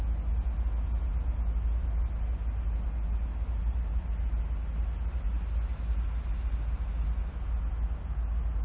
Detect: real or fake real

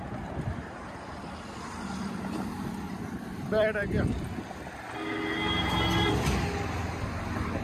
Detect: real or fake real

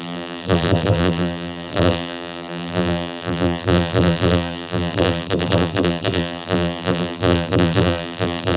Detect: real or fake fake